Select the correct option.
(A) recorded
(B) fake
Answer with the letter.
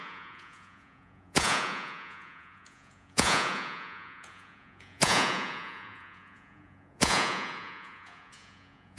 B